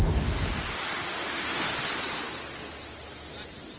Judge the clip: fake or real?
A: real